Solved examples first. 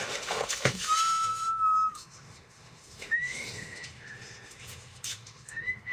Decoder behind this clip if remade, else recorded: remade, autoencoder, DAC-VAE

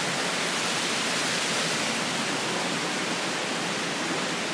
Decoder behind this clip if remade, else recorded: recorded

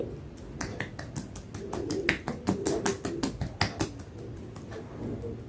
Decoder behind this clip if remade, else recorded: recorded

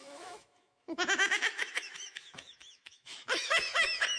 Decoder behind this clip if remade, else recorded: remade, autoencoder, DAC-VAE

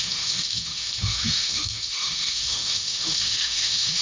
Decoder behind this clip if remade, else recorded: remade, autoencoder, DAC-VAE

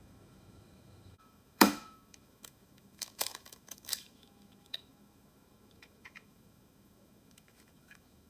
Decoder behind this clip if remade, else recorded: remade, autoencoder, DAC-VAE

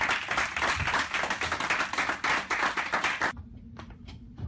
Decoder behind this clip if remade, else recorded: recorded